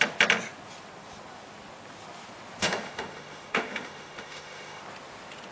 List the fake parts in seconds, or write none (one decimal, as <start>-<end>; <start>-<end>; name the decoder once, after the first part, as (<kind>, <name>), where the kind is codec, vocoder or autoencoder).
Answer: 2.6-4.8 (autoencoder, DAC-VAE)